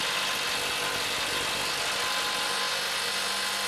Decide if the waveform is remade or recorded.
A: recorded